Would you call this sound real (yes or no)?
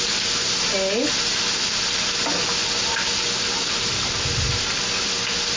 yes